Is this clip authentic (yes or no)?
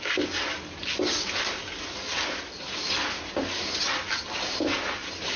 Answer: yes